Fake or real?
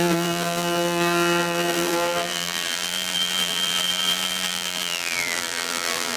fake